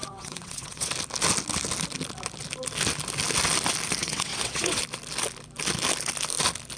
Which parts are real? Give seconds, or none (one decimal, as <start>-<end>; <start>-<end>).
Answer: 0.9-4.0; 4.8-6.8